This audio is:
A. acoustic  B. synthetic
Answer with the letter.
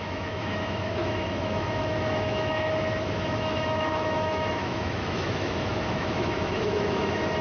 B